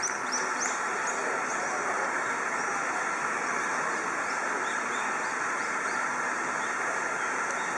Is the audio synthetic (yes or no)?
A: no